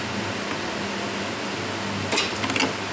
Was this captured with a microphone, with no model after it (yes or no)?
yes